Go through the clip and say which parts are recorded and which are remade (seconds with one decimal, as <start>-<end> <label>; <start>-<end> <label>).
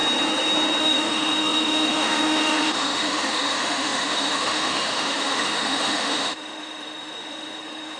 0.0-0.8 recorded; 0.8-8.0 remade